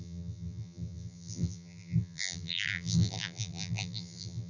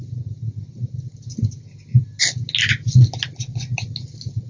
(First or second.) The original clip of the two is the second